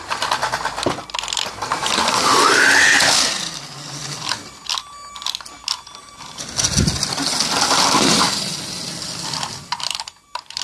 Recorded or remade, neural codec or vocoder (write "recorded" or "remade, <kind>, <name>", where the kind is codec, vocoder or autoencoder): recorded